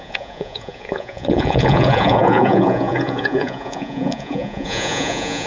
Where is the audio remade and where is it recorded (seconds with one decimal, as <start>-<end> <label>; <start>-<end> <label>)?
0.0-5.5 remade